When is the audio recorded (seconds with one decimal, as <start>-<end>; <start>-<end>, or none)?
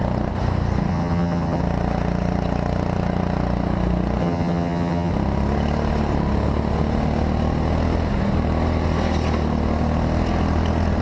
0.0-0.9; 1.6-4.2; 5.1-11.0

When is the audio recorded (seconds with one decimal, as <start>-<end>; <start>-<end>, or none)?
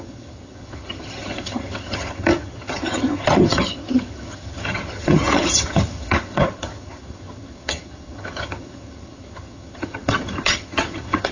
none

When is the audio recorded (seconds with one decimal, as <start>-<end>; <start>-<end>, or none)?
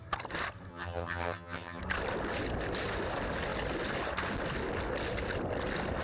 0.0-0.7; 1.8-6.0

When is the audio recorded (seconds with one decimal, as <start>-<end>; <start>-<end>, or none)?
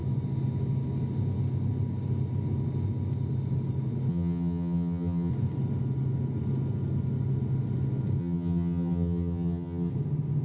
0.0-4.1; 5.3-8.2; 9.9-10.4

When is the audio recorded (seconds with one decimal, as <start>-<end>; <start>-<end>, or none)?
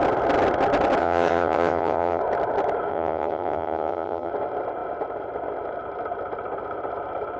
0.0-1.0; 2.2-2.9; 4.3-7.4